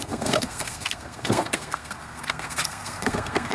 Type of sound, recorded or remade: remade